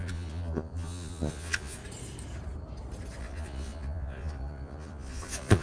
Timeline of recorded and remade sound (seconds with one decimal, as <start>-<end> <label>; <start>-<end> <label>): 0.0-1.8 remade; 1.8-3.2 recorded; 3.2-5.6 remade